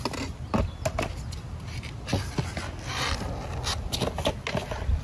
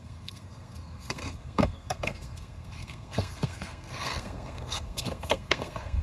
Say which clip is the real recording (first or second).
first